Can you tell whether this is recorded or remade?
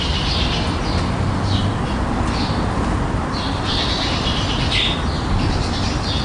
recorded